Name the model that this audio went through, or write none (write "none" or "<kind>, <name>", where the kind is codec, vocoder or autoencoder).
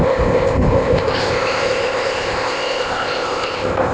codec, ZipCodec